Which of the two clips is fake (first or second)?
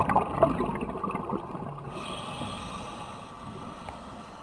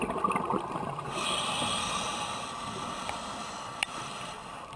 second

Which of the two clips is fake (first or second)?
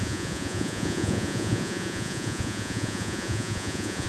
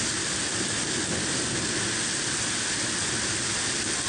first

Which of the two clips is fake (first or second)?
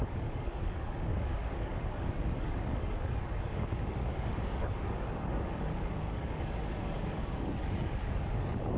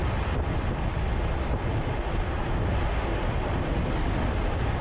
first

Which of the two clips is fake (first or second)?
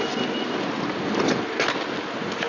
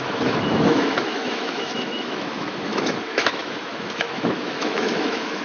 second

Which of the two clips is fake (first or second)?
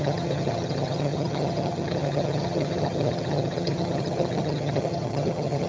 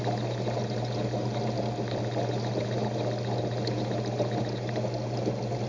first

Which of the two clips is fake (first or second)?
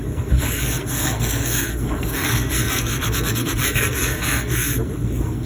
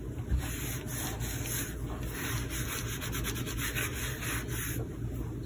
first